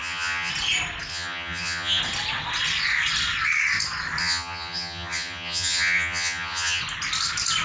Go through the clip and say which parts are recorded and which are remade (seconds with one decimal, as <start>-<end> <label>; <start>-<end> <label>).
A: 0.0-0.5 remade; 0.5-1.1 recorded; 1.1-2.0 remade; 2.0-4.2 recorded; 4.2-6.8 remade; 6.8-7.6 recorded